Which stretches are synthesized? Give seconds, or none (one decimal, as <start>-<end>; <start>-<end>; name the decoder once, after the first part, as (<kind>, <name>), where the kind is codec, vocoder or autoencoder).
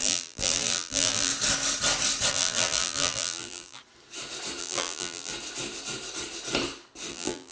0.0-1.3 (vocoder, BigVGAN v2); 2.3-3.8; 4.6-5.3; 7.1-7.5